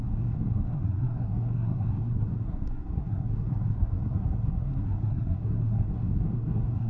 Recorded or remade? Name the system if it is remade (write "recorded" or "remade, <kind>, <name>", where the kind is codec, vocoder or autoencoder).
remade, codec, SNAC